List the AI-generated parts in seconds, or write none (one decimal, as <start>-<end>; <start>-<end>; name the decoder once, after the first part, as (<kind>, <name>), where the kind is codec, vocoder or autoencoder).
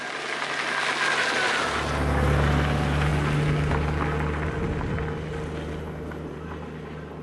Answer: none